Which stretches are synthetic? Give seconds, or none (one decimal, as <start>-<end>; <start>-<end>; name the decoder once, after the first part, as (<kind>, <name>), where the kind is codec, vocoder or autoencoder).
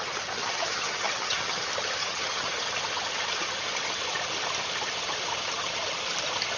0.4-1.6 (vocoder, HiFi-GAN); 2.0-2.6